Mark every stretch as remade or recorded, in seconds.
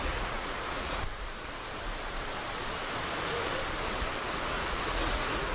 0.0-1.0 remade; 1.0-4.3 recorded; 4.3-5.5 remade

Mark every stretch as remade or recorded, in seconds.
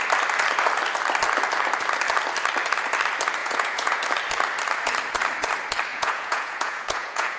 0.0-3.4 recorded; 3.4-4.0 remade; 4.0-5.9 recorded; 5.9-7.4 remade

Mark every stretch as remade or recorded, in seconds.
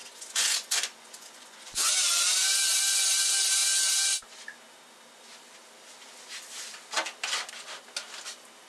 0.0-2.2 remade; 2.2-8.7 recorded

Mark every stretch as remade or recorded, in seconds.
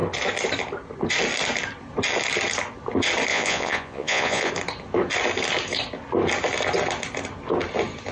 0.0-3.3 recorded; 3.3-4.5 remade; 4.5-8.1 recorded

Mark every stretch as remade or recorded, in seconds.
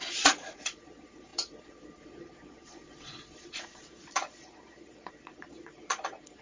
0.0-6.4 remade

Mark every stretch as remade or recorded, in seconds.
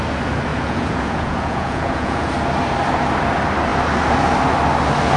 0.0-0.5 recorded; 0.5-2.3 remade; 2.3-5.2 recorded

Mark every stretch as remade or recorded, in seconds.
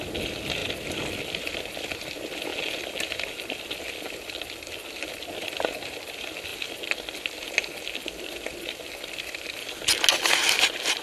0.0-11.0 recorded